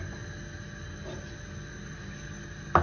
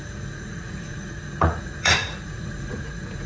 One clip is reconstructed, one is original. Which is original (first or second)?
first